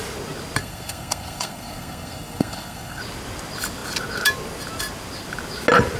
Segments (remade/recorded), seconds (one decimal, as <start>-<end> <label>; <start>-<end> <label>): 0.0-0.6 recorded; 0.6-3.0 remade; 3.0-6.0 recorded